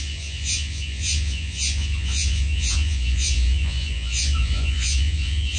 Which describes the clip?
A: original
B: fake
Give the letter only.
B